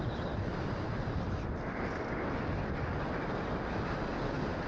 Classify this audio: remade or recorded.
recorded